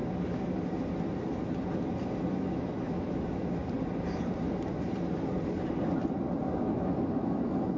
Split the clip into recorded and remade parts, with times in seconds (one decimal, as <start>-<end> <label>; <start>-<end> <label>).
0.0-2.3 recorded; 2.3-3.6 remade; 3.6-6.6 recorded; 6.6-7.8 remade